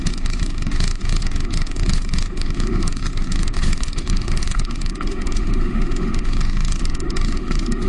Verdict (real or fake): fake